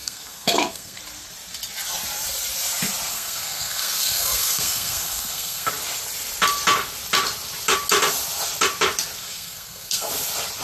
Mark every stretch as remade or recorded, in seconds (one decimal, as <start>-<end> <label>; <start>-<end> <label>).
0.0-1.0 remade; 1.0-3.1 recorded; 3.1-5.7 remade; 5.7-9.2 recorded; 9.2-10.1 remade; 10.1-10.6 recorded